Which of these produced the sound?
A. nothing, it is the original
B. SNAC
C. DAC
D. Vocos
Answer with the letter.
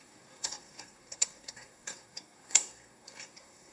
B